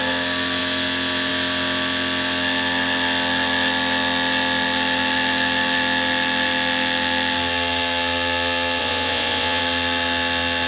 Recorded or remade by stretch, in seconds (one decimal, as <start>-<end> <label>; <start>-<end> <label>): 0.0-8.8 recorded; 8.8-9.6 remade; 9.6-10.7 recorded